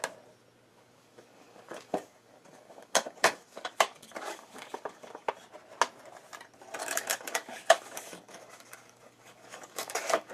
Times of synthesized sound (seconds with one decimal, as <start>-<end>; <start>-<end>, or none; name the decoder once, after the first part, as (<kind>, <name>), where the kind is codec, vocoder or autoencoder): 0.7-5.3 (codec, DAC); 6.8-10.3